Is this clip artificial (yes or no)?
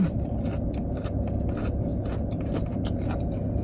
no